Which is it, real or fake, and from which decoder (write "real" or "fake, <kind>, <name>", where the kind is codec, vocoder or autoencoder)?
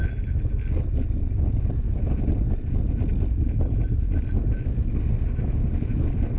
real